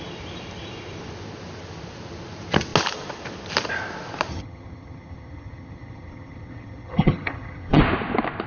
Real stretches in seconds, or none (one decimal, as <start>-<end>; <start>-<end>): 0.0-4.3; 7.8-8.5